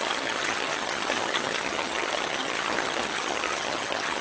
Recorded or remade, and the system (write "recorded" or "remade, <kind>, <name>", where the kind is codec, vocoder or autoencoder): remade, vocoder, HiFi-GAN